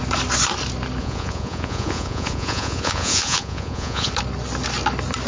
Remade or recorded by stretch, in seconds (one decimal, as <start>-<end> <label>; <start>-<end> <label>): 0.0-1.0 recorded; 1.0-4.1 remade; 4.1-5.3 recorded